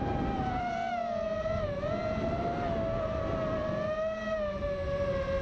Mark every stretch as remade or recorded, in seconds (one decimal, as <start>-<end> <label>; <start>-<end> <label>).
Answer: 0.0-5.4 recorded